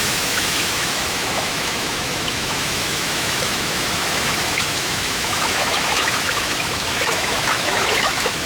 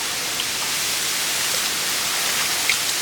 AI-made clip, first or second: first